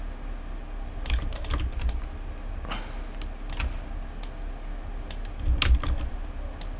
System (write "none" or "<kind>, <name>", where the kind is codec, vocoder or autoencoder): none